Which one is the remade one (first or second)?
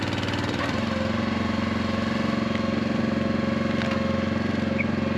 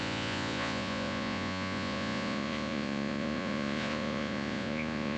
second